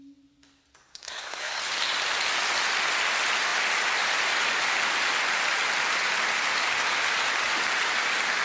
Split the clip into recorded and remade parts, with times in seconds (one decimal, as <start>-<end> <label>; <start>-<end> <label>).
0.0-0.9 recorded; 0.9-1.6 remade; 1.6-8.4 recorded